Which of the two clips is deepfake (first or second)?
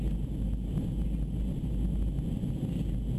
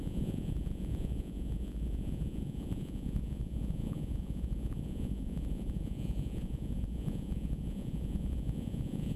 second